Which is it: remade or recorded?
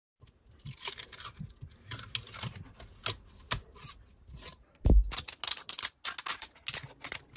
recorded